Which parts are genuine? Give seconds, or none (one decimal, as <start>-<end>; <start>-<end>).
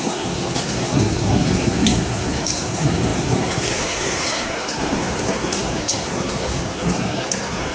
none